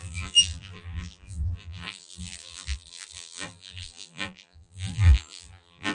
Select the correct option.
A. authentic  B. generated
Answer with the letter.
B